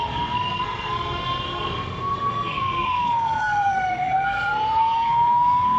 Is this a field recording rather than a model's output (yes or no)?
no